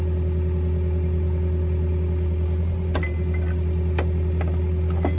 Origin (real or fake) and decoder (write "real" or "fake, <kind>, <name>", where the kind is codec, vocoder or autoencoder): real